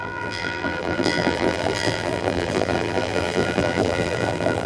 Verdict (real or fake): fake